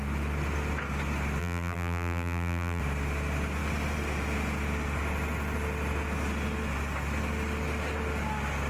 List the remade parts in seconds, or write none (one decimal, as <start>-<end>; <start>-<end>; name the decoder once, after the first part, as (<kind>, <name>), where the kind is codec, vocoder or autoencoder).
1.4-2.8 (vocoder, BigVGAN v2)

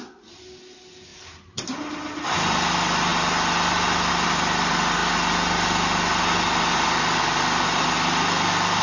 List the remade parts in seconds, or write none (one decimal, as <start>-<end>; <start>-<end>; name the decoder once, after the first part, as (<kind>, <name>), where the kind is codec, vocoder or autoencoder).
1.1-1.8 (vocoder, BigVGAN v2)